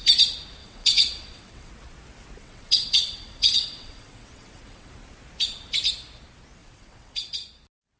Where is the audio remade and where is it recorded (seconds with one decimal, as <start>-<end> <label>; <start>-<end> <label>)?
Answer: 0.0-0.6 recorded; 0.6-1.7 remade; 1.7-2.4 recorded; 2.4-4.9 remade; 4.9-6.6 recorded; 6.6-7.3 remade; 7.3-8.0 recorded